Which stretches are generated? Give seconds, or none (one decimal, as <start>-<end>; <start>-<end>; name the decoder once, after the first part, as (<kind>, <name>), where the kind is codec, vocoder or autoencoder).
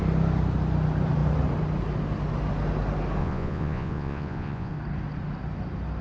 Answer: 3.2-4.7 (vocoder, Vocos)